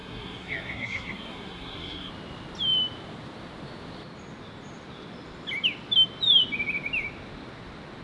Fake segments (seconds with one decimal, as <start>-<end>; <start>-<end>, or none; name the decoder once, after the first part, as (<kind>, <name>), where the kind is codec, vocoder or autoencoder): 0.0-2.1 (codec, SNAC)